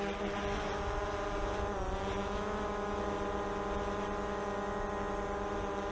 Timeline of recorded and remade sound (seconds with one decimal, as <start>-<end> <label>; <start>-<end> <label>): 0.0-2.2 recorded; 2.2-3.0 remade; 3.0-5.9 recorded